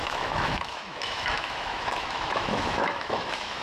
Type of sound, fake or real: fake